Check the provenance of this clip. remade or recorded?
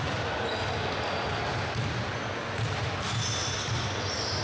recorded